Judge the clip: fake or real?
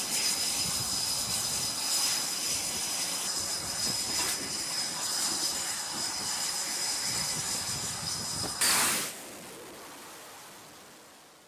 real